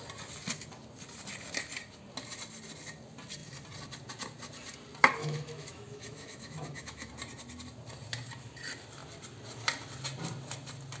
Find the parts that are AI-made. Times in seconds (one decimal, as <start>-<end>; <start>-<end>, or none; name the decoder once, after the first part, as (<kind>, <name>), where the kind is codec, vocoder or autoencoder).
5.2-7.1 (autoencoder, DAC-VAE)